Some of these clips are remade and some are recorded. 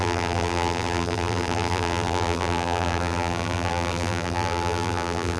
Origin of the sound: remade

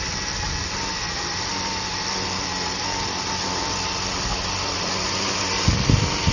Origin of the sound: recorded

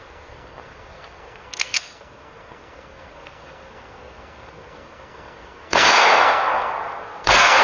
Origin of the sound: remade